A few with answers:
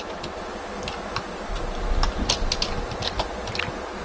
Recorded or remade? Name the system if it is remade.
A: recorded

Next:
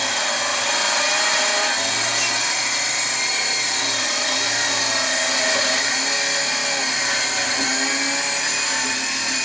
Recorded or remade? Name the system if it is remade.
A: recorded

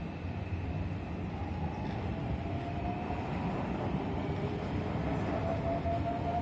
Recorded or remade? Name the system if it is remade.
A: recorded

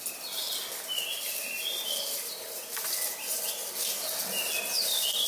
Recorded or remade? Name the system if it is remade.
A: recorded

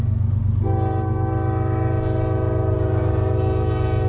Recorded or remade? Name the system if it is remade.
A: recorded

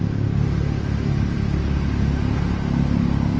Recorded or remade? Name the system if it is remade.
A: recorded